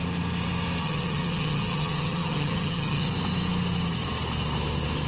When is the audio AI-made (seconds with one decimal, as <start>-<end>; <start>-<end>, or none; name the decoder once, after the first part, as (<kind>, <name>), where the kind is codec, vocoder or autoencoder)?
0.8-3.1 (vocoder, HiFi-GAN)